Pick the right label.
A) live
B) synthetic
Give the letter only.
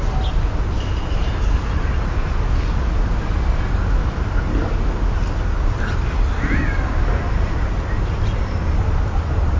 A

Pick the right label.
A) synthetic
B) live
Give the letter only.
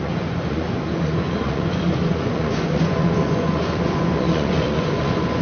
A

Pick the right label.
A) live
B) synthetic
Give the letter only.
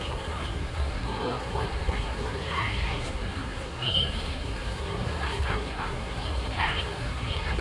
B